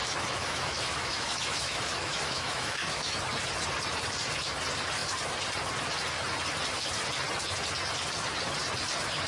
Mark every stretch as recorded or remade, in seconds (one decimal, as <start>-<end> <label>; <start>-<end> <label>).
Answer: 0.0-3.2 remade; 3.2-9.3 recorded